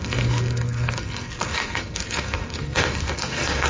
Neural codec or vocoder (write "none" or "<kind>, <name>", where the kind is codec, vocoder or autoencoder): codec, SNAC